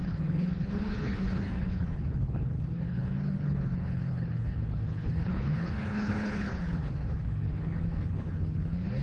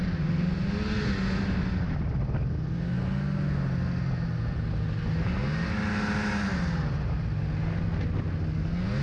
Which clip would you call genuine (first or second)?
second